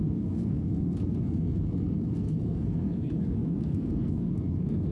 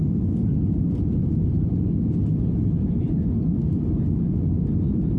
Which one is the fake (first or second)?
first